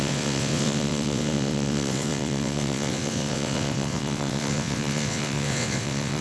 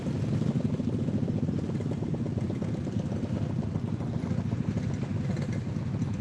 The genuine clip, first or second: second